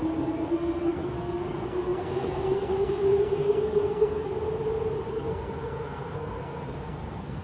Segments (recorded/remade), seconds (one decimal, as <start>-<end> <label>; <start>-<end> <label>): 0.0-4.3 remade; 4.3-5.1 recorded; 5.1-7.4 remade

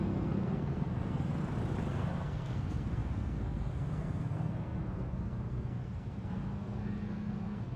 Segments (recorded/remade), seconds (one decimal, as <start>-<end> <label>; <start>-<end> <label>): 0.0-1.3 remade; 1.3-1.9 recorded; 1.9-7.8 remade

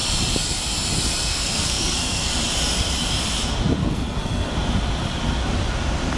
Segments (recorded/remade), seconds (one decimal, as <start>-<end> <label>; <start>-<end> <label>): 0.0-1.3 recorded; 1.3-2.3 remade; 2.3-3.8 recorded; 3.8-4.5 remade; 4.5-6.2 recorded

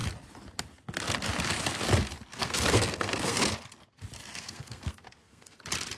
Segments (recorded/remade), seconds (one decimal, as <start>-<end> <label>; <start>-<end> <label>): 0.0-2.3 recorded; 2.3-3.4 remade; 3.4-4.3 recorded; 4.3-5.6 remade; 5.6-6.0 recorded

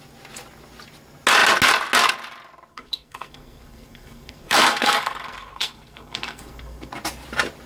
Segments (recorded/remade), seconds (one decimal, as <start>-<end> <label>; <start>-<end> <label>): 0.0-2.7 recorded; 2.7-6.9 remade; 6.9-7.7 recorded

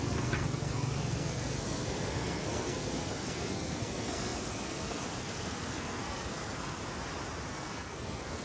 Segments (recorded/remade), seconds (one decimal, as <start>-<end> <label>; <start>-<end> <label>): 0.0-6.8 remade; 6.8-7.5 recorded; 7.5-8.4 remade

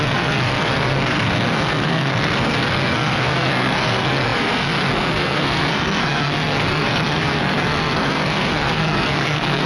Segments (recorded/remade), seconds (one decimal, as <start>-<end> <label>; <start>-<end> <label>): 0.0-9.7 remade